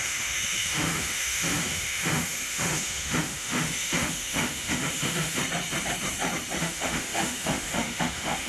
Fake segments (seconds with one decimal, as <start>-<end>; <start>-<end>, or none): 0.0-5.4; 6.6-8.5